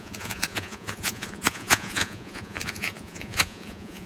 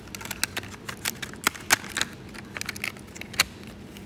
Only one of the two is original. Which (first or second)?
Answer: second